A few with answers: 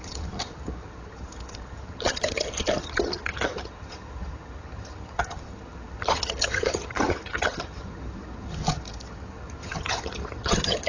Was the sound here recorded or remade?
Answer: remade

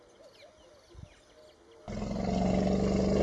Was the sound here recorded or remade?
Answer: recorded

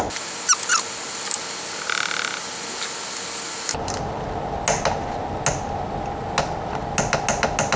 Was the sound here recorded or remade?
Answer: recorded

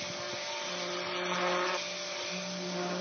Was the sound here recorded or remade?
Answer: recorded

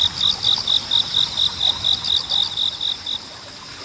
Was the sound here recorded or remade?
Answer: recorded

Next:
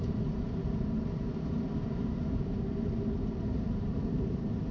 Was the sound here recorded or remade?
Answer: remade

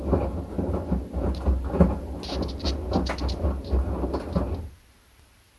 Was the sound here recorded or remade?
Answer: recorded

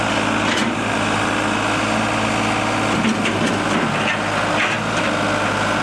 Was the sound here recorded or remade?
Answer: recorded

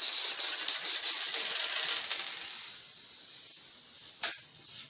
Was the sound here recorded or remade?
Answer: recorded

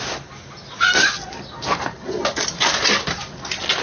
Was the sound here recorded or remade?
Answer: recorded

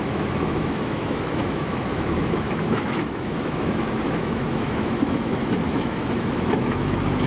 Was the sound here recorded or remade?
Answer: remade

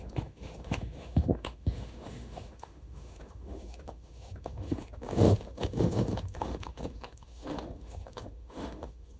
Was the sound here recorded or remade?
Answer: remade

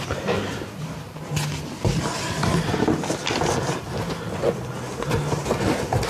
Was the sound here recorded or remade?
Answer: recorded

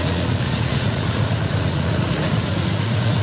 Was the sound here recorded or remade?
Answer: remade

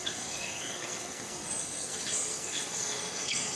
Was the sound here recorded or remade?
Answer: remade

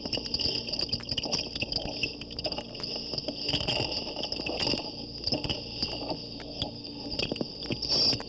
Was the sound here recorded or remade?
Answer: recorded